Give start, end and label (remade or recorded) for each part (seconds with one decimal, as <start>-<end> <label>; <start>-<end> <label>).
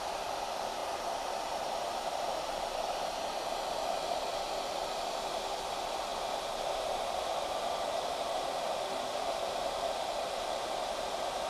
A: 0.0-11.5 remade